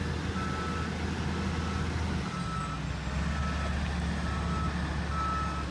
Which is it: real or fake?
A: real